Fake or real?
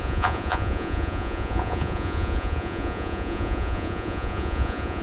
fake